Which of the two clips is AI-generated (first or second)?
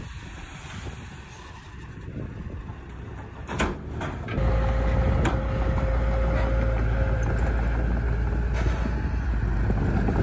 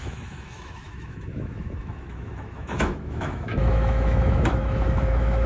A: second